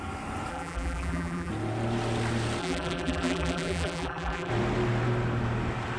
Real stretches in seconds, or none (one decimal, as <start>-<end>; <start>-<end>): 0.0-0.5; 1.5-2.6; 4.5-6.0